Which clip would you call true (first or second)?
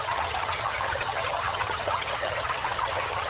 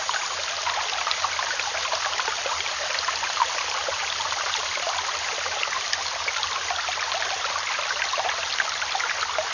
second